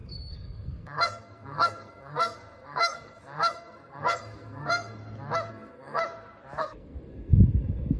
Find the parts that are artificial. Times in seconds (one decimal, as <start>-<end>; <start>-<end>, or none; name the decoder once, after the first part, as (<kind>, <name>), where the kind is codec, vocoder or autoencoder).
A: 0.0-5.0 (codec, SNAC); 5.5-6.0; 6.6-8.0